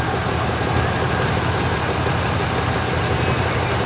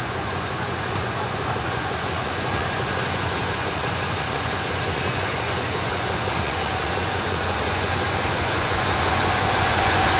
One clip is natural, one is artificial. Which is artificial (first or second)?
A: second